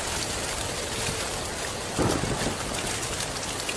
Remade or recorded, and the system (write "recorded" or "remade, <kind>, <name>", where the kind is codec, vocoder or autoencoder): recorded